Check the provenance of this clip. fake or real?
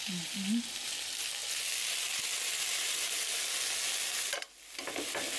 real